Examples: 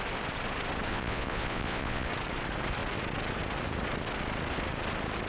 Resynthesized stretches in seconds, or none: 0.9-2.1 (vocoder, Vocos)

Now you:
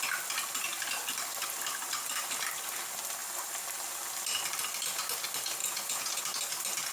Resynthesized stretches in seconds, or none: 5.6-6.2 (vocoder, Vocos)

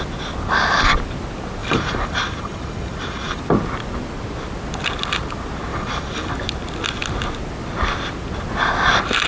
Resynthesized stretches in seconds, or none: 1.6-3.4 (vocoder, BigVGAN v2); 5.7-6.3